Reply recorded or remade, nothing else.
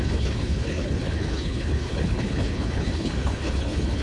remade